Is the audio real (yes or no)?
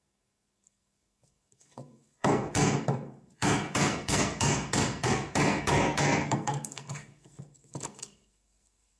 no